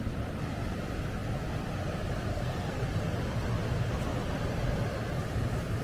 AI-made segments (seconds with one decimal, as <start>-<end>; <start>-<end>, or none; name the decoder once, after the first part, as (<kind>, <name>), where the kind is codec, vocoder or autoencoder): 2.3-2.8 (codec, SNAC)